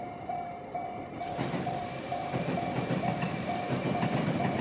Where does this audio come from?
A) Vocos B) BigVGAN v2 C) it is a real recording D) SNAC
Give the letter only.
B